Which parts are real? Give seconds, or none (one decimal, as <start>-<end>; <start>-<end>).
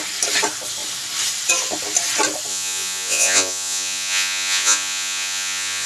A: 0.0-2.5